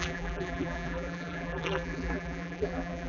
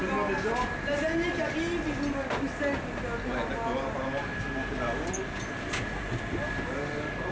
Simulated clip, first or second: first